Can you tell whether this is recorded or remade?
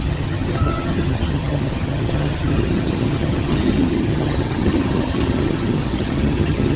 remade